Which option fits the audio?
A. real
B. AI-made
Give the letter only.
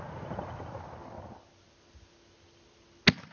A